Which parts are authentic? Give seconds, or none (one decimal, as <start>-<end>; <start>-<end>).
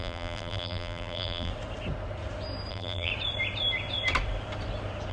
1.5-2.7; 3.1-5.1